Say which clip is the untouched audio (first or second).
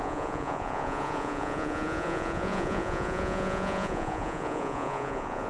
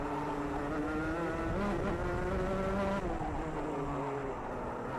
second